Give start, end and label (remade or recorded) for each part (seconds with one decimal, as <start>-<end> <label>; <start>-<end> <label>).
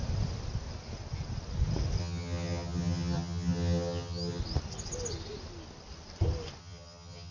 0.0-2.0 recorded; 2.0-4.4 remade; 4.4-6.6 recorded; 6.6-7.3 remade